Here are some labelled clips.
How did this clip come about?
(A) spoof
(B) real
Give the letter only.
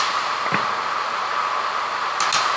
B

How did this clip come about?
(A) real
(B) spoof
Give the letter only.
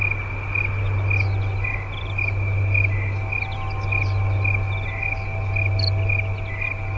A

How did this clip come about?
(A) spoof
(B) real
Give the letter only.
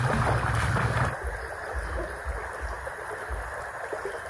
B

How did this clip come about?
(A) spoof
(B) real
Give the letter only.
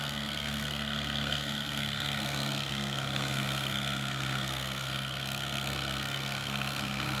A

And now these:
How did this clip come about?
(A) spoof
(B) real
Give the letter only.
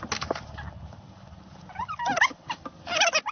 B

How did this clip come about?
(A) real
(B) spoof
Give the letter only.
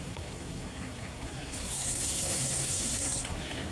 B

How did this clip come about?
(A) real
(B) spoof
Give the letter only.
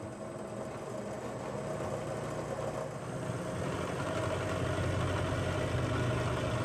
A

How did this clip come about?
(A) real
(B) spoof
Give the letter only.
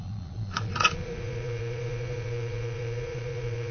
B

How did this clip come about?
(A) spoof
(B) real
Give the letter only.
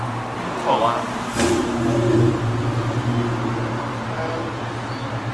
B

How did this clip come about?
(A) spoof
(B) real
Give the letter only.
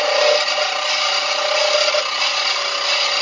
B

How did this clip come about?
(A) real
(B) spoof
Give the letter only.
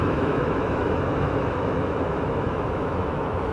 B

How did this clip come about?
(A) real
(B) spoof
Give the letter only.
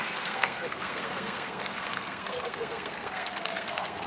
B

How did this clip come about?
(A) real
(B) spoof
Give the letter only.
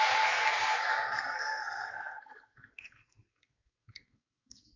B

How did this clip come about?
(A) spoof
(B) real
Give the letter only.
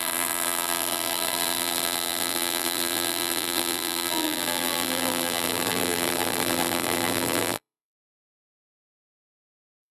A